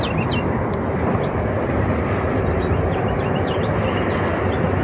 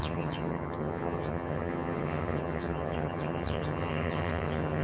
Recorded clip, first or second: first